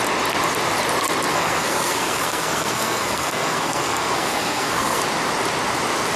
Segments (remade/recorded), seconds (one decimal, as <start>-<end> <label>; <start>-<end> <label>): 0.0-1.3 recorded; 1.3-5.0 remade; 5.0-6.2 recorded